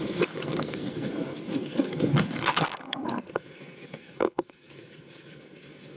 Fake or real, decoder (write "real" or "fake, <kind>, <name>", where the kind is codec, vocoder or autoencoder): fake, codec, SNAC